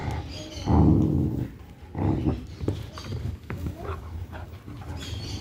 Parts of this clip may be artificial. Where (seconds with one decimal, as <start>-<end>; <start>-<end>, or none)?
3.1-4.5